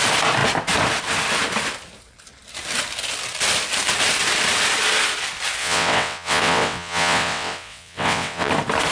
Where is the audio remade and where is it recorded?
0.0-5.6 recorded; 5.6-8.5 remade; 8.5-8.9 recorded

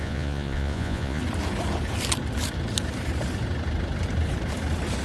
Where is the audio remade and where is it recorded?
0.0-1.2 remade; 1.2-5.0 recorded

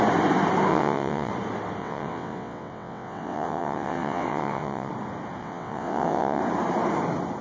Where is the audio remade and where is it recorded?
0.0-0.7 recorded; 0.7-1.3 remade; 1.3-1.8 recorded; 1.8-4.9 remade; 4.9-5.4 recorded; 5.4-6.4 remade; 6.4-7.4 recorded

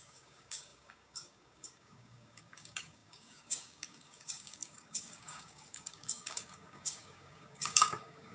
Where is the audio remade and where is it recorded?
0.0-8.3 remade